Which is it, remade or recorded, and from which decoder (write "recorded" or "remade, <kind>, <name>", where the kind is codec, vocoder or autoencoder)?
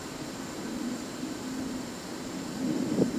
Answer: recorded